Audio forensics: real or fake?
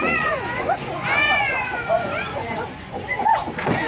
fake